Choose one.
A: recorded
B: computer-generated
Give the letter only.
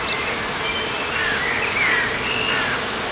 A